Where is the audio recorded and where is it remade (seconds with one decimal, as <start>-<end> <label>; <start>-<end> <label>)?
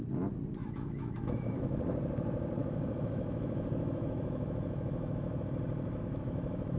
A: 0.0-0.6 recorded; 0.6-1.8 remade; 1.8-2.6 recorded; 2.6-5.4 remade; 5.4-6.0 recorded; 6.0-6.8 remade